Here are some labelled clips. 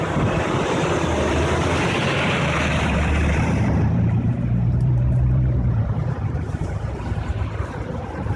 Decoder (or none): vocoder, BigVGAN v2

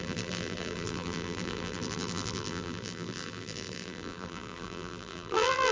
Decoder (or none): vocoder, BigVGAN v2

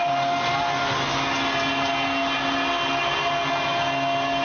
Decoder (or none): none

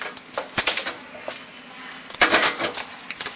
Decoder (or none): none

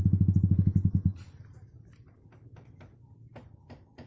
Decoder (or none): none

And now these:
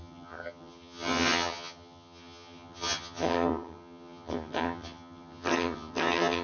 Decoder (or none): vocoder, HiFi-GAN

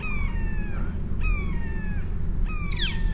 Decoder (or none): none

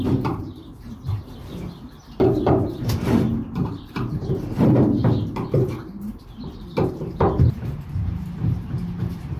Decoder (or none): vocoder, BigVGAN v2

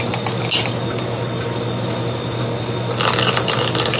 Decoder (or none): none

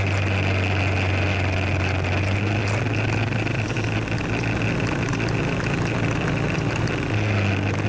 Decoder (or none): none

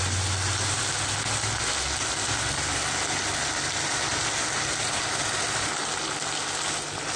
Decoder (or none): none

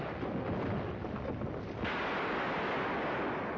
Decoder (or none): none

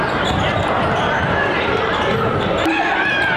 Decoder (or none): vocoder, BigVGAN v2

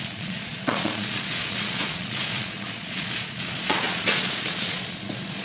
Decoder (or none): vocoder, Vocos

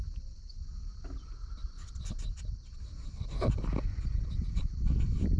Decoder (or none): none